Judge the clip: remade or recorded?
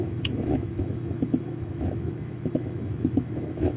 remade